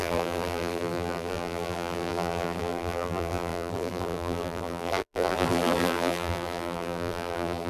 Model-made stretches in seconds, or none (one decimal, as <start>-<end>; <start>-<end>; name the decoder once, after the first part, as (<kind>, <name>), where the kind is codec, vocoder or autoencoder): 0.0-7.7 (vocoder, BigVGAN v2)